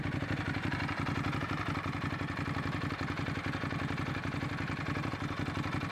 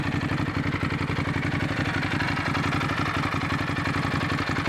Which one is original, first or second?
second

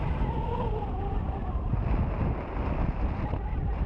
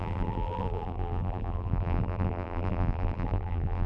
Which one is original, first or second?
first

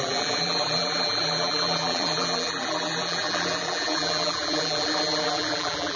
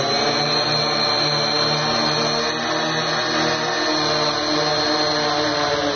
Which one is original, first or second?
second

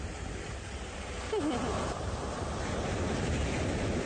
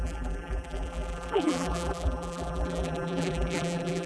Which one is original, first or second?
first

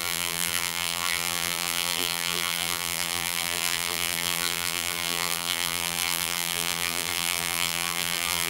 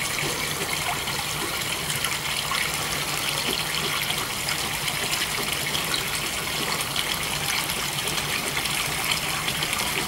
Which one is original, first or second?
second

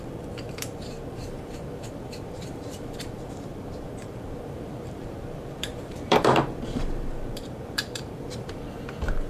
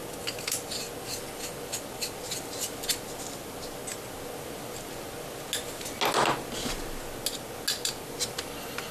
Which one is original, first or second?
second